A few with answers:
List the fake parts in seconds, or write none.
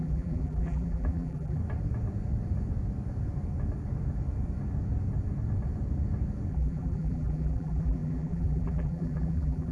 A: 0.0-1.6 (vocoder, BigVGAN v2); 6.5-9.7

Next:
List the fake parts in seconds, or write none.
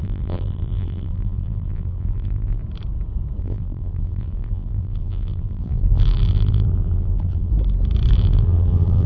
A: 0.0-2.6 (vocoder, BigVGAN v2); 3.4-7.5; 8.1-9.1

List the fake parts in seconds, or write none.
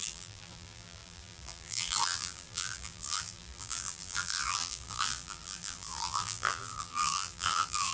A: 0.0-7.9 (vocoder, BigVGAN v2)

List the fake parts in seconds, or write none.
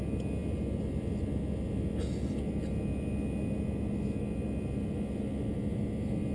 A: none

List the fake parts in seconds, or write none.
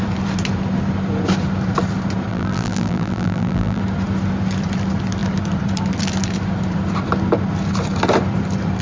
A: 2.3-3.8 (vocoder, BigVGAN v2)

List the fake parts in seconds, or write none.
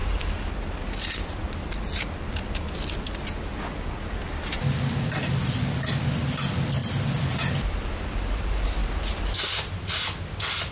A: 0.0-1.6 (vocoder, BigVGAN v2); 6.8-7.3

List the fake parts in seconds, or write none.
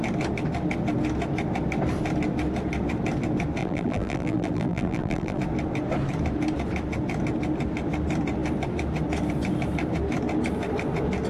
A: 3.6-5.4 (vocoder, BigVGAN v2)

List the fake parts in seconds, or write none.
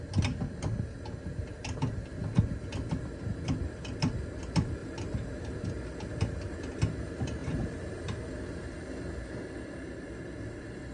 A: 4.8-5.4 (vocoder, BigVGAN v2); 7.4-8.2